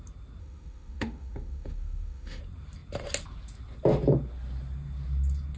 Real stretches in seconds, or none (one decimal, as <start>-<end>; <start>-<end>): 0.0-0.4; 2.4-5.6